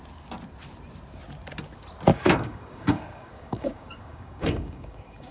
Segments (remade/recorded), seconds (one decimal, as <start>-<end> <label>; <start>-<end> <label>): 0.0-2.1 recorded; 2.1-5.3 remade

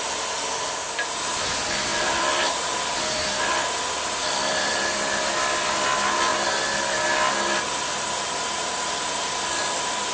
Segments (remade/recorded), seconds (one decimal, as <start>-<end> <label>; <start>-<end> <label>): 0.0-1.9 recorded; 1.9-3.4 remade; 3.4-4.2 recorded; 4.2-4.8 remade; 4.8-10.1 recorded

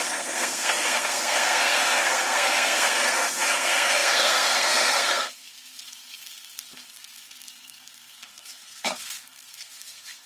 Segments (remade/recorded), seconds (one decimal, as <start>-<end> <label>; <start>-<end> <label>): 0.0-10.3 remade

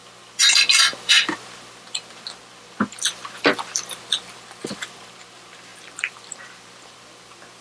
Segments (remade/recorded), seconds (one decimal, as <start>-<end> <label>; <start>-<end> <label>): 0.0-7.6 remade